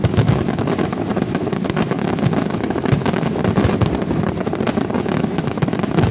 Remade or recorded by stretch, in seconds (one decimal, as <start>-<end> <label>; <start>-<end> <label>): 0.0-3.4 remade; 3.4-5.0 recorded; 5.0-6.1 remade